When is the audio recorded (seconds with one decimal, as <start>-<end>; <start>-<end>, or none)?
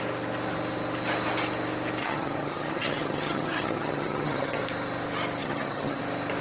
0.0-2.0; 4.6-5.4; 6.0-6.4